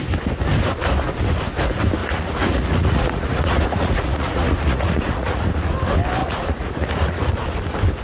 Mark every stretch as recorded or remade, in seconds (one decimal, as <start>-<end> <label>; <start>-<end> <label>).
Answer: 0.0-2.0 recorded; 2.0-5.7 remade; 5.7-6.2 recorded; 6.2-7.3 remade; 7.3-8.0 recorded